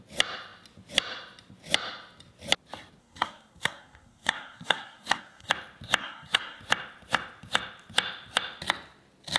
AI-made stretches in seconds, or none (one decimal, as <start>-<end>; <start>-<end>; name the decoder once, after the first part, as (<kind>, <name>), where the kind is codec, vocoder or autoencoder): 3.0-5.5 (codec, SNAC); 6.0-6.6